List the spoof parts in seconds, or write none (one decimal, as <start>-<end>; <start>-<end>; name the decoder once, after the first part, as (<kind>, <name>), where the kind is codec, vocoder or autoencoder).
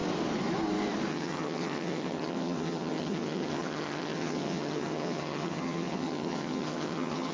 1.1-7.3 (vocoder, HiFi-GAN)